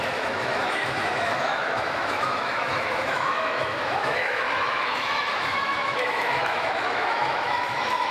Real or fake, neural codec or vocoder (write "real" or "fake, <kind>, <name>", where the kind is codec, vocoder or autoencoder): fake, autoencoder, DAC-VAE